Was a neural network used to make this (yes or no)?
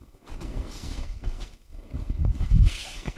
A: yes